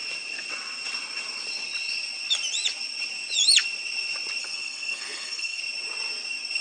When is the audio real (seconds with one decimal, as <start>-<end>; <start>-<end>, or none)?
0.0-4.4; 5.6-6.6